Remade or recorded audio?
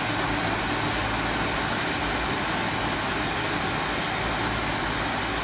recorded